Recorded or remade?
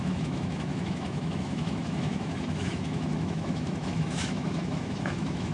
remade